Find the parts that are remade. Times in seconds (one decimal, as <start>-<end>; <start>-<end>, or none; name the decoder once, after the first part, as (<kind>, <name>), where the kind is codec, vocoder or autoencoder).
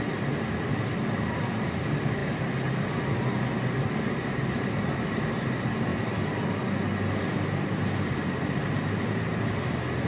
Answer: none